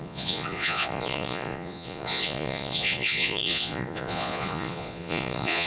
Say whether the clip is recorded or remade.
remade